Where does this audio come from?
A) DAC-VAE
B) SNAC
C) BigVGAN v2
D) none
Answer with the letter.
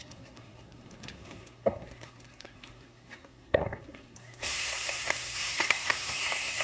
B